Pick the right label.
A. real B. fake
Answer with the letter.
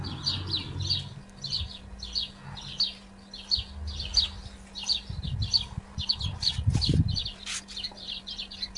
A